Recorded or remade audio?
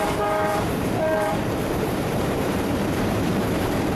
remade